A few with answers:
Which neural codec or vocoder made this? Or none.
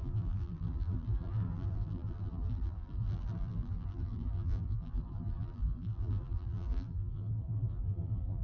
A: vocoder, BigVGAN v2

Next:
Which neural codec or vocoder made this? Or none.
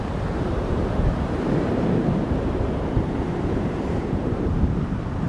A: vocoder, BigVGAN v2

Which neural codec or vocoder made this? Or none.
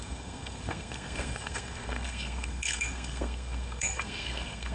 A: codec, SNAC